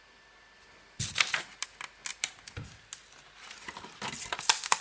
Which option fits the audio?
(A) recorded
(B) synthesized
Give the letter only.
A